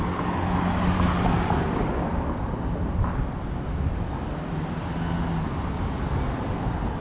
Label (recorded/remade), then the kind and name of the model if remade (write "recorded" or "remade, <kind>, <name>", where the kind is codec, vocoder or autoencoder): recorded